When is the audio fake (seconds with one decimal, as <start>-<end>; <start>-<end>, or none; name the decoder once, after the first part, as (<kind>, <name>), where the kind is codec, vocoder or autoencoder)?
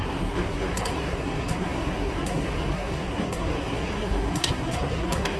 0.0-5.4 (codec, SNAC)